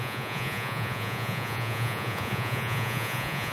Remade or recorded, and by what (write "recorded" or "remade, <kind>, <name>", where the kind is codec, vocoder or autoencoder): remade, vocoder, Vocos